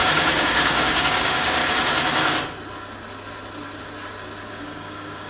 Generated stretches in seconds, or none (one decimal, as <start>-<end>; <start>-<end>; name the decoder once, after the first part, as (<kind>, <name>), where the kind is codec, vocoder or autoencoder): 0.0-1.6 (codec, DAC); 4.5-5.3